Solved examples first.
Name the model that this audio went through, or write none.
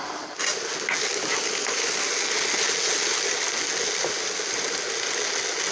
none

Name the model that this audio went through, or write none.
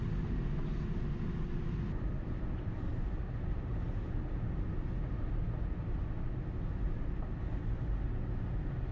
none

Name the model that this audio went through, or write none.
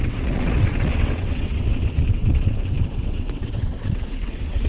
vocoder, WaveNeXt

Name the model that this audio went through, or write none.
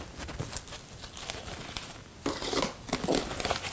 none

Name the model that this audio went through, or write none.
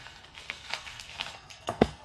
codec, SNAC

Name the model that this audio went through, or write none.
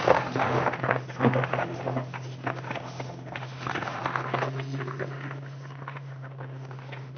autoencoder, DAC-VAE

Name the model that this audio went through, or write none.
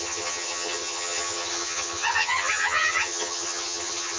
vocoder, HiFi-GAN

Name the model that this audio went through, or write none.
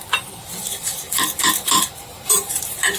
vocoder, BigVGAN v2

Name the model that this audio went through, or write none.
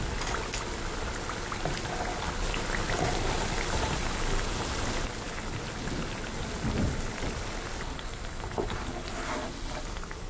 none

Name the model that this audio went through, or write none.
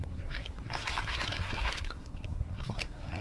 codec, SNAC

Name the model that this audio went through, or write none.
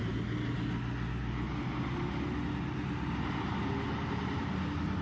none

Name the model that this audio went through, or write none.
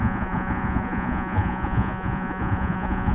vocoder, Vocos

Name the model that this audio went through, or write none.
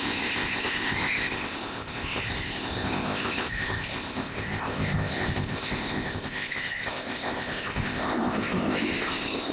codec, ZipCodec